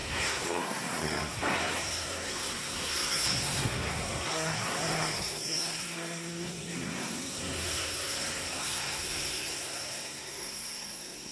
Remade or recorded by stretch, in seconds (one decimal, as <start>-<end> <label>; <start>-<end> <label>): 0.0-11.3 remade